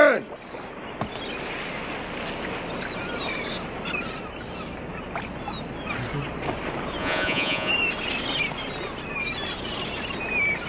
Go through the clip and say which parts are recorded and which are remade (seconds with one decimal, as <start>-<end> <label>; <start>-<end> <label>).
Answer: 0.0-7.0 recorded; 7.0-7.7 remade; 7.7-10.7 recorded